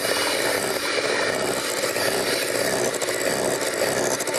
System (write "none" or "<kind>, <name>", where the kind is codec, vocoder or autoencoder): none